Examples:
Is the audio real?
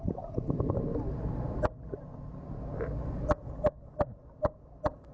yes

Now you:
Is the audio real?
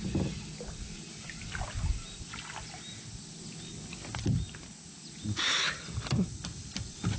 yes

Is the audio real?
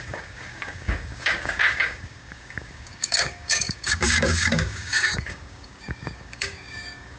no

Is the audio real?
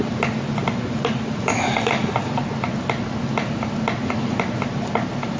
yes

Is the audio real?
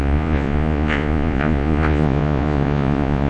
no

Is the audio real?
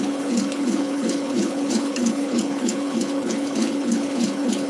no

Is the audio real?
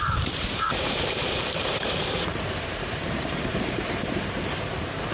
no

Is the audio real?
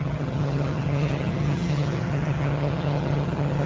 no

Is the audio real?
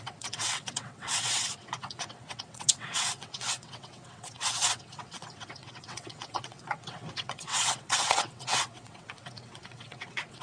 no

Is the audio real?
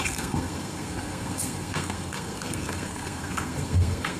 no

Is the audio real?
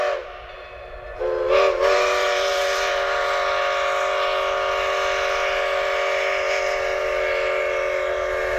yes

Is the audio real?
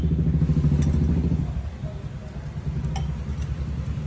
yes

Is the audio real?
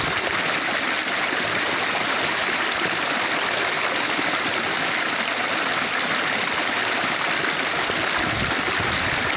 no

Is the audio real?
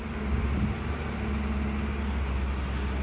yes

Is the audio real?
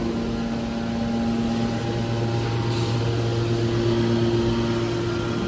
yes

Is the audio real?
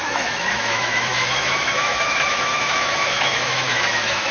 no